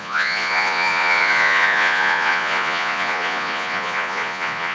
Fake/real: fake